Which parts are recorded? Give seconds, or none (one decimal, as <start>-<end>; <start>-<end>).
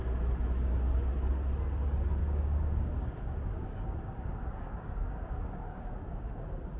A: 0.0-2.2; 6.3-6.8